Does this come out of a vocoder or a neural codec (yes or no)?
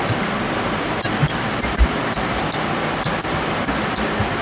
no